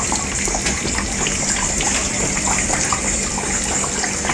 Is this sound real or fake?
real